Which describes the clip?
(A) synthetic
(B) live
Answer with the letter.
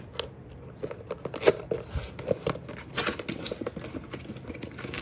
B